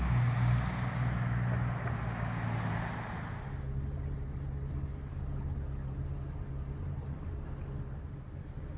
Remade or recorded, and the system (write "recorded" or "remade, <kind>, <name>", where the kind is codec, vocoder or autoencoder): recorded